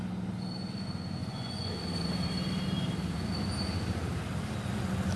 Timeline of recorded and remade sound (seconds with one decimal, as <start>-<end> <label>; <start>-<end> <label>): 0.0-1.2 recorded; 1.2-1.7 remade; 1.7-5.2 recorded